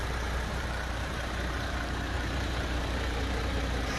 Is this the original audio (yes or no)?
no